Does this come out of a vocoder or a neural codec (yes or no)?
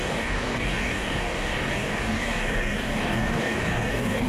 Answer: yes